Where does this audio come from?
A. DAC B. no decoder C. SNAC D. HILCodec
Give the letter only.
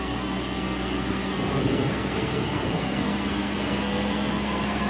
C